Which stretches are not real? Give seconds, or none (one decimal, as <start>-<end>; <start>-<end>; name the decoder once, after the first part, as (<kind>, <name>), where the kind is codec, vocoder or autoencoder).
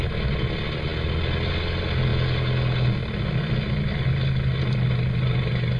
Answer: none